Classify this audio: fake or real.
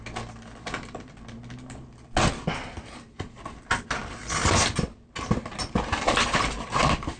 real